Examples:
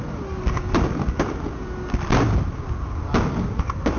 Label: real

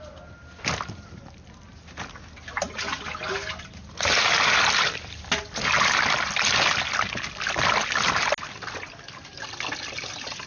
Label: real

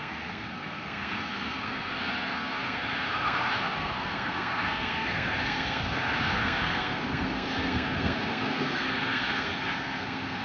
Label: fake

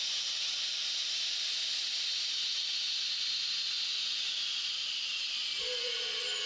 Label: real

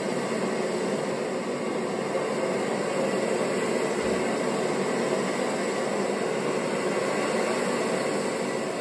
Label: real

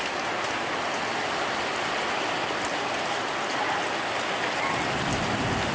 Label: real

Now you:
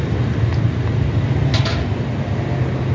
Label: real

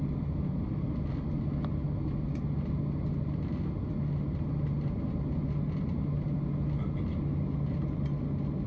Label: real